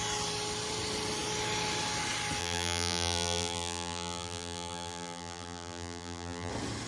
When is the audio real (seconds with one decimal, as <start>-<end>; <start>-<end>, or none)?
0.0-2.4; 6.5-6.9